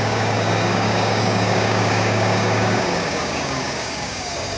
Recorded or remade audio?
remade